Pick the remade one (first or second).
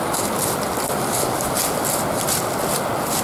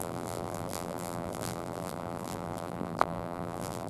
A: second